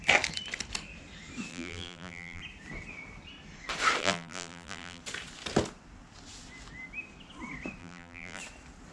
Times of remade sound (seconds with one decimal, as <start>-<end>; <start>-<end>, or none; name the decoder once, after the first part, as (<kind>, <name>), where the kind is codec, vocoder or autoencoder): 1.5-2.4 (vocoder, BigVGAN v2); 4.0-5.0; 7.8-8.4